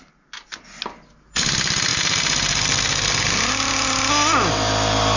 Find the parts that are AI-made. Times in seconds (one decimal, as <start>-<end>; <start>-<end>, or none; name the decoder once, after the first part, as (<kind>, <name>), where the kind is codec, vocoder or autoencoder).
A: none